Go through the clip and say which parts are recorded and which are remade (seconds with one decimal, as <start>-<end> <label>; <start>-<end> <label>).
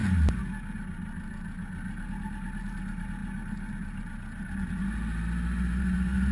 0.0-6.3 recorded